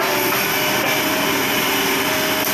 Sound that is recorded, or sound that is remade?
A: recorded